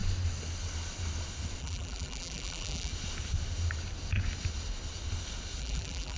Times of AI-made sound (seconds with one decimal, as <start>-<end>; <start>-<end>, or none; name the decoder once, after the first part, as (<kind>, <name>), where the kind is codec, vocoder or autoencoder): 1.6-2.9 (vocoder, BigVGAN v2); 5.6-6.2